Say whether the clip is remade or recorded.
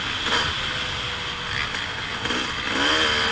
recorded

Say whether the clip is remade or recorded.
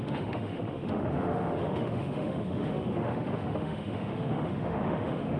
remade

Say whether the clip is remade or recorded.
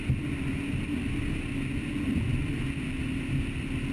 recorded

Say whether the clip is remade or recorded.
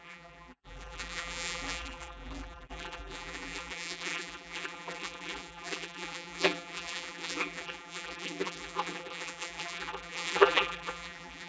remade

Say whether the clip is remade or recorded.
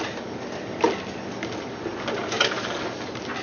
recorded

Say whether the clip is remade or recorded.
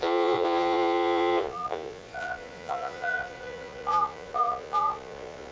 remade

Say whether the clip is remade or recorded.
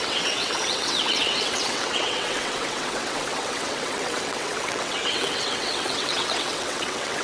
remade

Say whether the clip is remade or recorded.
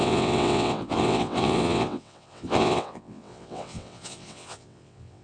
remade